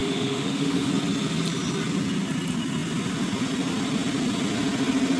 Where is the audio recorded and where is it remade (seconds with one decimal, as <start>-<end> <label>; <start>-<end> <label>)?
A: 0.0-0.9 remade; 0.9-5.2 recorded